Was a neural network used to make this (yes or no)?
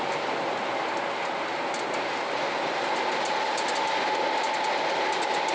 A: no